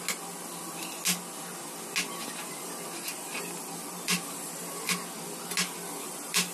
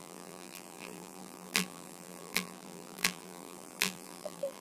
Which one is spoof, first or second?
second